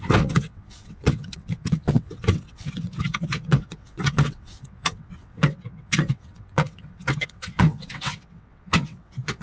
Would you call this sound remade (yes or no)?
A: yes